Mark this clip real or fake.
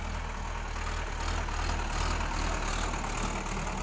real